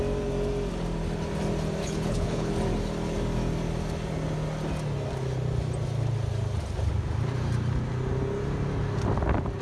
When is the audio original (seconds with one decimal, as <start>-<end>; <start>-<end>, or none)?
0.0-1.8; 2.5-9.6